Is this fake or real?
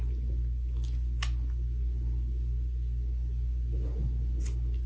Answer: real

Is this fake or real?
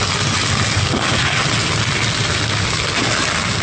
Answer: real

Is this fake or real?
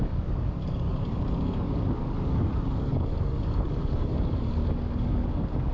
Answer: fake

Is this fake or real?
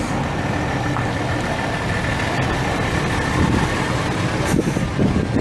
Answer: real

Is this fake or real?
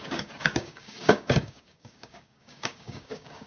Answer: fake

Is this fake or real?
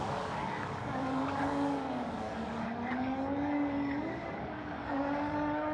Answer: fake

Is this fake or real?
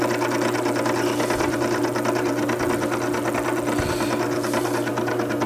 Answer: real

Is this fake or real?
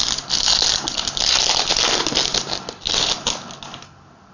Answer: real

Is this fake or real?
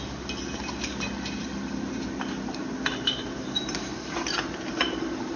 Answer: real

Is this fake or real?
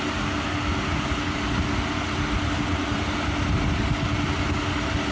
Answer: real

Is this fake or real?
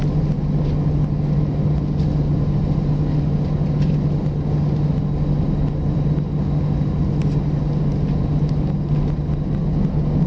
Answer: real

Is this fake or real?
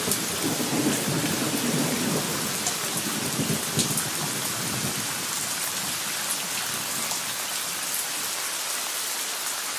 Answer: real